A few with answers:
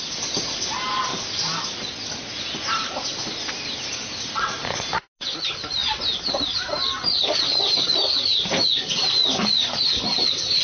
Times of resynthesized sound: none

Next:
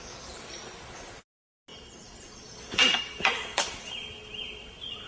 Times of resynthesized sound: 1.7-5.1 (vocoder, BigVGAN v2)